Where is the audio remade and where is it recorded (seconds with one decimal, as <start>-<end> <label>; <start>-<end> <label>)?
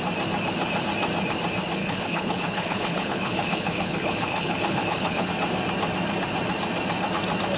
0.0-1.8 recorded; 1.8-5.3 remade; 5.3-7.6 recorded